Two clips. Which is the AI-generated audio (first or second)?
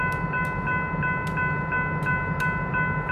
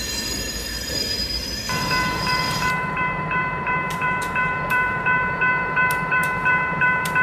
second